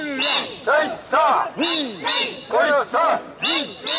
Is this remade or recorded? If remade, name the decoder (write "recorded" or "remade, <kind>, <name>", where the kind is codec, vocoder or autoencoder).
recorded